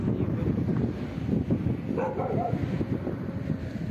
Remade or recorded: recorded